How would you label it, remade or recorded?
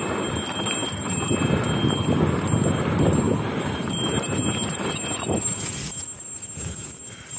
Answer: recorded